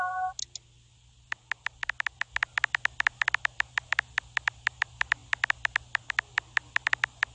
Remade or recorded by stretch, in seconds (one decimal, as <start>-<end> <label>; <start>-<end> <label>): 0.0-7.3 recorded